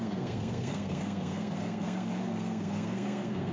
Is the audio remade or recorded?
remade